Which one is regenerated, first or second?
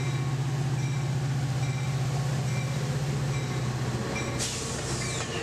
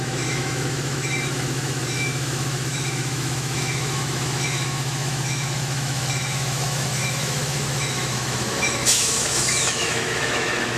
second